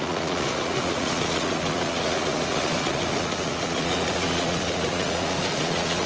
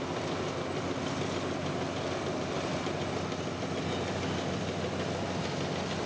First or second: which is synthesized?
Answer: first